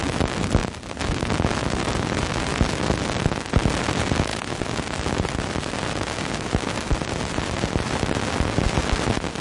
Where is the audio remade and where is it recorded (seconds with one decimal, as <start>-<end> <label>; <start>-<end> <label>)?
0.0-9.4 recorded